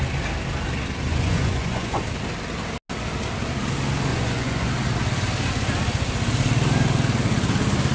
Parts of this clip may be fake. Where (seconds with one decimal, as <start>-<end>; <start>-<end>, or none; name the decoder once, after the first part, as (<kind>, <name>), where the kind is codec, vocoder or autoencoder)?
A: 1.1-2.0 (vocoder, Vocos); 4.1-4.7